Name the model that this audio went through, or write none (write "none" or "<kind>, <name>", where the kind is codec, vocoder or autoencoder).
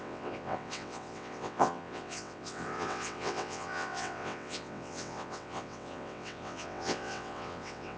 vocoder, WaveNeXt